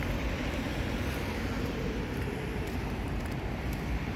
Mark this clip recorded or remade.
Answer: remade